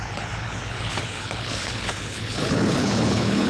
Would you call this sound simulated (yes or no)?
yes